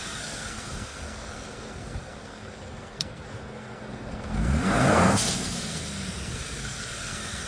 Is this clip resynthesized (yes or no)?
yes